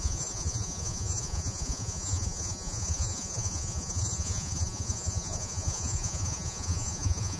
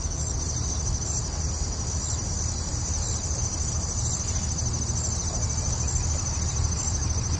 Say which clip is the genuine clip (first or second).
second